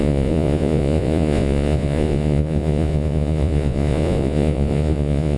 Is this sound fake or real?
fake